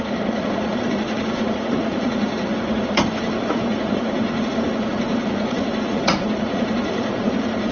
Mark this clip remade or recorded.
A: remade